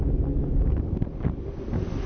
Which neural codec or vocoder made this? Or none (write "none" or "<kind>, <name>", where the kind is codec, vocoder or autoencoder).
none